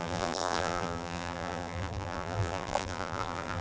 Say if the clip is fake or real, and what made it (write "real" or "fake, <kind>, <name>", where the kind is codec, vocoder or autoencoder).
fake, vocoder, BigVGAN v2